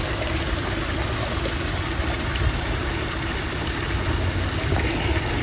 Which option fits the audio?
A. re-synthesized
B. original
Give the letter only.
B